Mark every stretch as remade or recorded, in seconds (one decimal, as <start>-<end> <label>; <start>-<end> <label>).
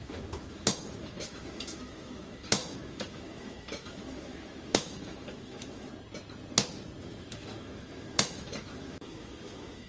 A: 0.0-5.9 remade; 5.9-7.0 recorded; 7.0-9.9 remade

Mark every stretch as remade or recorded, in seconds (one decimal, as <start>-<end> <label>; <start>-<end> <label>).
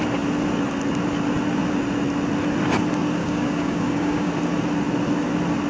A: 0.0-3.2 recorded; 3.2-4.3 remade; 4.3-5.7 recorded